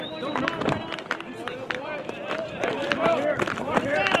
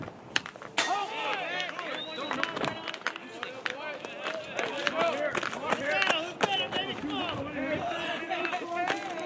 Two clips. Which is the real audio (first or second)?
second